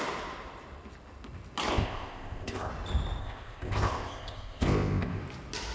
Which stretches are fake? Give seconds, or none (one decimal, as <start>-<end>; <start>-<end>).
1.7-2.7; 3.2-5.2